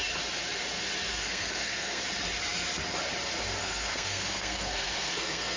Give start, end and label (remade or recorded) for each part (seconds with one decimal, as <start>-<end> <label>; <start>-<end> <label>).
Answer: 0.0-1.1 recorded; 1.1-2.0 remade; 2.0-3.6 recorded; 3.6-5.6 remade